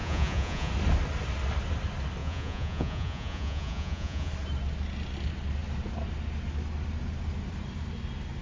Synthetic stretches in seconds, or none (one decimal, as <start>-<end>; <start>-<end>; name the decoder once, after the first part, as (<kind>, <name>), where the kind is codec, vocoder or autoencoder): 0.0-0.7 (vocoder, Vocos); 2.2-4.3